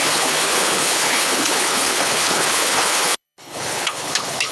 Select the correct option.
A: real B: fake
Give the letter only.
B